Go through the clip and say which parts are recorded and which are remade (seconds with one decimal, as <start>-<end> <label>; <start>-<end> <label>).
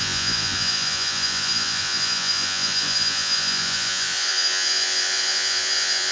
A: 0.0-6.1 remade